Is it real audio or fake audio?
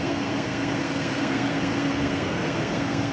fake